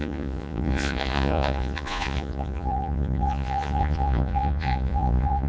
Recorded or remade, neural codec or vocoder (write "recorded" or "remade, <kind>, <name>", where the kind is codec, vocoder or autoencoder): remade, vocoder, Vocos